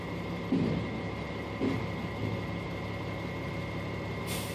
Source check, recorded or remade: recorded